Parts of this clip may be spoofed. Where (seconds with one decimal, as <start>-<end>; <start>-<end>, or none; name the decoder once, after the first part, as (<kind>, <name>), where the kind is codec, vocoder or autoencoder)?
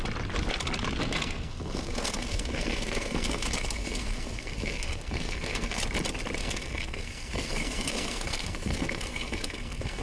1.0-5.8 (codec, SNAC); 6.4-10.0